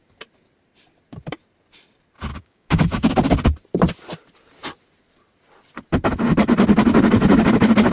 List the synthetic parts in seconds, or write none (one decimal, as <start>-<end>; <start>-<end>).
2.3-3.1